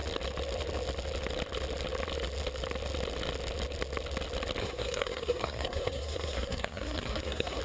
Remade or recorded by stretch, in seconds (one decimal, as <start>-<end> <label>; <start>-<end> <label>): 0.0-4.6 recorded; 4.6-7.6 remade